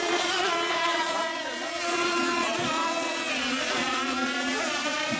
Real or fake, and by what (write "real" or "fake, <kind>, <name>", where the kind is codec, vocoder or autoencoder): fake, vocoder, Vocos